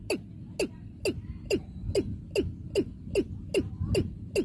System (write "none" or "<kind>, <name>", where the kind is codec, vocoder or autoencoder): none